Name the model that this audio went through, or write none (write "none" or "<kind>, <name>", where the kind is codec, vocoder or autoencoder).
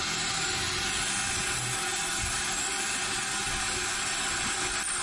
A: none